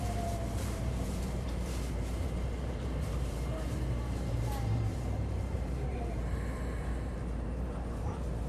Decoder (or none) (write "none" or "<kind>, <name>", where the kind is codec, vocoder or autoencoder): vocoder, BigVGAN v2